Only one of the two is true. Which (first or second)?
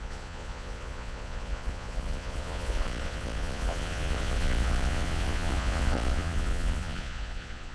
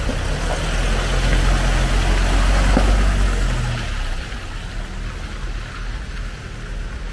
second